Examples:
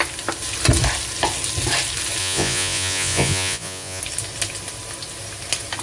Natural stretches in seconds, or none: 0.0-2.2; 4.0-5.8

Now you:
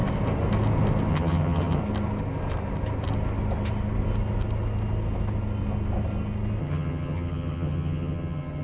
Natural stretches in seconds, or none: 0.0-1.1; 1.8-6.6

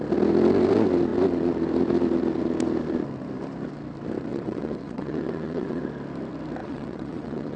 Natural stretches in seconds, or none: 0.0-4.3; 5.8-6.6